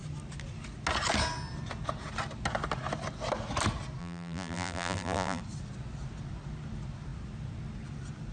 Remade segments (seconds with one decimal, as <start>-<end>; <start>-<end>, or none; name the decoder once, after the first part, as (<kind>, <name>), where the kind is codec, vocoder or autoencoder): 4.0-5.4 (vocoder, BigVGAN v2)